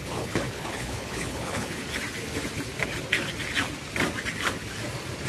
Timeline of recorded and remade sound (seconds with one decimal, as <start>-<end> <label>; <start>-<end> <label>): 0.0-1.8 remade; 1.8-5.3 recorded